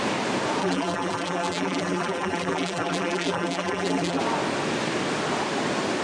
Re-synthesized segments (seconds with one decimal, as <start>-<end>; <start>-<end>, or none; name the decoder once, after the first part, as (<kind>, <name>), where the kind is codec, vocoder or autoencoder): 0.6-4.2 (vocoder, BigVGAN v2)